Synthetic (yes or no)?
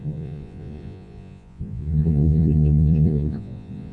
yes